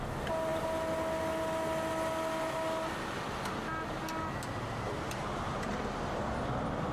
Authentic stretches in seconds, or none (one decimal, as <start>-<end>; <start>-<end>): 0.0-5.2; 5.7-6.9